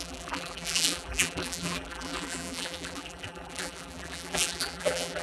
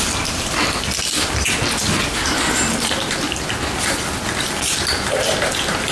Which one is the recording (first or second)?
second